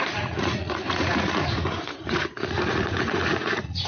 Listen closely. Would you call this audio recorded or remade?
remade